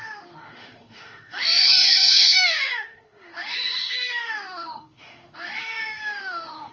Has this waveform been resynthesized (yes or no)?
yes